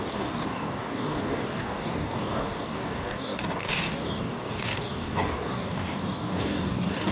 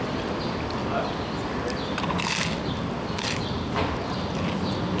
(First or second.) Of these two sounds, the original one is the second